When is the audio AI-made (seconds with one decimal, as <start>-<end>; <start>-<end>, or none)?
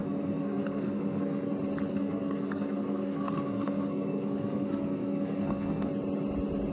0.0-1.5; 1.9-5.9